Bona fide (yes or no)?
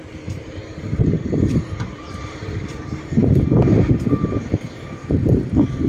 no